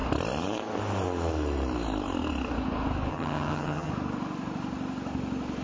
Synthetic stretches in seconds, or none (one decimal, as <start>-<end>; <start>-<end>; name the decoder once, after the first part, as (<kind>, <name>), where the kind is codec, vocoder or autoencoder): 3.1-3.9 (vocoder, HiFi-GAN)